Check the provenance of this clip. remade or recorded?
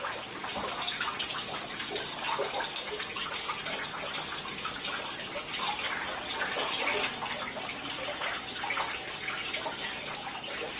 recorded